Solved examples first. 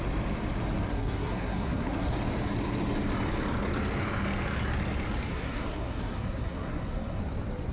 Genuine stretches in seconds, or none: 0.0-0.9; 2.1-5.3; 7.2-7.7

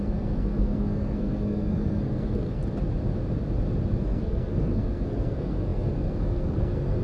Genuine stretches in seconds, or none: 2.6-4.0

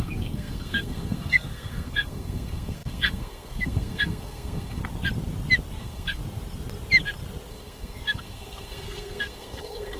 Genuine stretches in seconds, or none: 4.8-5.8; 6.2-7.5

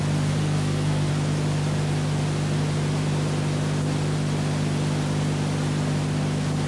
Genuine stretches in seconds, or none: 0.0-0.4; 1.1-6.7

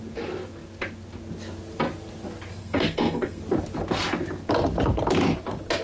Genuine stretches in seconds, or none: 0.0-2.6; 3.4-5.8